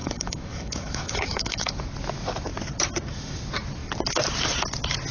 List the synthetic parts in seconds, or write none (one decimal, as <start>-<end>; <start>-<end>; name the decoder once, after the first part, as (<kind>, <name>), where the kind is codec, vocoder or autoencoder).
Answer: 0.0-1.7 (autoencoder, DAC-VAE)